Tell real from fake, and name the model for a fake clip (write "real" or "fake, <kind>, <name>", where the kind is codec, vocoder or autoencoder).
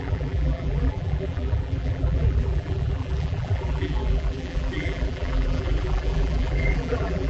fake, vocoder, BigVGAN v2